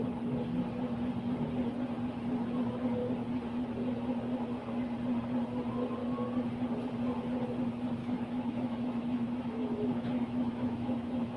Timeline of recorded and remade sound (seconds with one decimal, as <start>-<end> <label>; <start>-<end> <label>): 0.0-8.0 recorded; 8.0-11.4 remade